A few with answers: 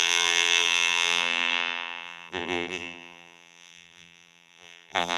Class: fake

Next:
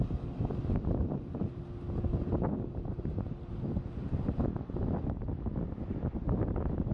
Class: real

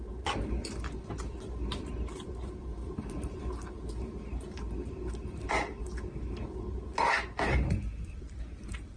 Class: fake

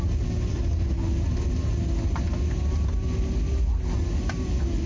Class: real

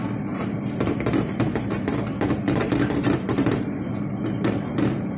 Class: fake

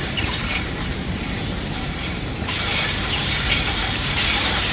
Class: fake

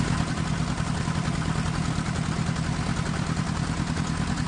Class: real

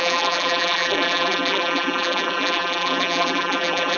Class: fake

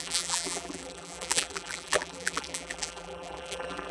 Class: fake